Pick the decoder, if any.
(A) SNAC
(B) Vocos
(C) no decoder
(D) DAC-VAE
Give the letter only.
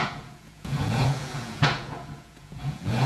B